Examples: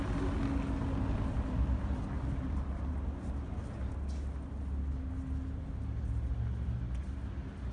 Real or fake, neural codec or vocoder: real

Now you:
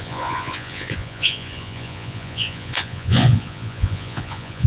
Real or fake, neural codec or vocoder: fake, vocoder, Vocos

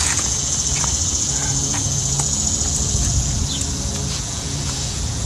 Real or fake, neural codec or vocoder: fake, vocoder, Vocos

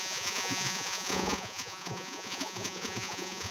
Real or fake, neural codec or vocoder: fake, vocoder, Vocos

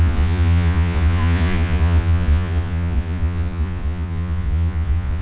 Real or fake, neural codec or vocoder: fake, vocoder, Vocos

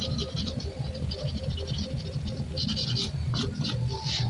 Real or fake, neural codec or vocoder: real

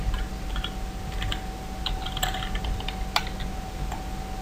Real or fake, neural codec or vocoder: real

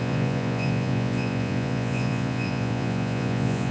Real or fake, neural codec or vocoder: fake, vocoder, Vocos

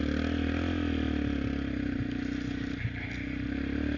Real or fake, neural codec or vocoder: real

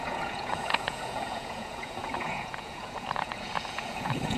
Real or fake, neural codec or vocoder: fake, vocoder, Vocos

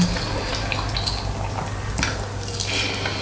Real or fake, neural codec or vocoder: real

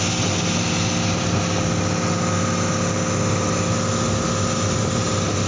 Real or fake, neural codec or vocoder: real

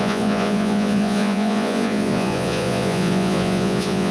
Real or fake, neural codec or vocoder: fake, vocoder, Vocos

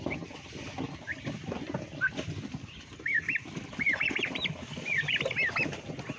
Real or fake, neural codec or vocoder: real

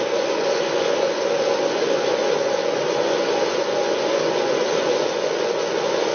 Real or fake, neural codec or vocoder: fake, vocoder, Vocos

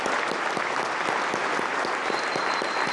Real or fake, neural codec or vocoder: real